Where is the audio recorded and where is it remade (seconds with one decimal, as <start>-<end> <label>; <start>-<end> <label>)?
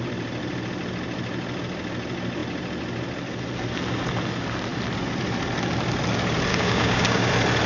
0.0-6.5 recorded; 6.5-7.3 remade; 7.3-7.7 recorded